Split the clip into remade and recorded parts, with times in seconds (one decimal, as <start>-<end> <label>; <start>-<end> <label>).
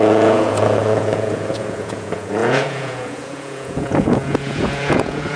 0.0-5.4 remade